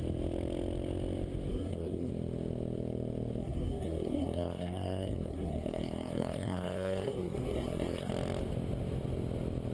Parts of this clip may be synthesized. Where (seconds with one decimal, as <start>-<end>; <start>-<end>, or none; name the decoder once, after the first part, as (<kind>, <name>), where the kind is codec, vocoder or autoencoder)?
1.5-2.1 (codec, SNAC); 3.4-8.1